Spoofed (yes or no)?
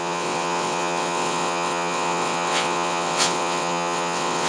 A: yes